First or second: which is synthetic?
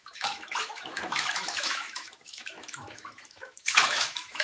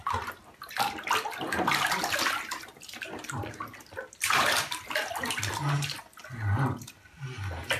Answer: first